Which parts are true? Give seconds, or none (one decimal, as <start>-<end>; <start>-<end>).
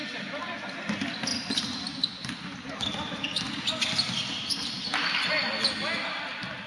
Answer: 0.0-6.7